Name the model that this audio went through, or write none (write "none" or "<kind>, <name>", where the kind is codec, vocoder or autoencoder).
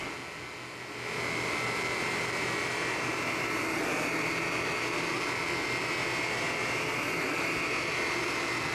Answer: none